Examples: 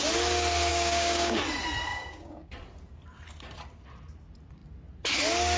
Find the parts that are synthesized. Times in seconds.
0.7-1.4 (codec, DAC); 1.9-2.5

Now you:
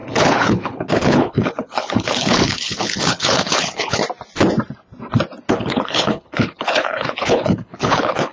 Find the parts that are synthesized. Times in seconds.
0.0-4.0 (codec, HILCodec); 5.5-8.3